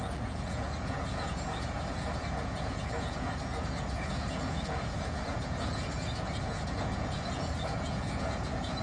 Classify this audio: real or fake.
fake